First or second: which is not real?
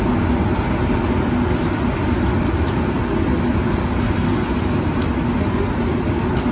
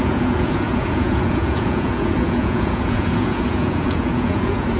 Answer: second